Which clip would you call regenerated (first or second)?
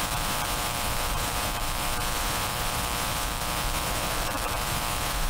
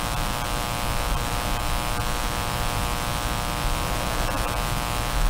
first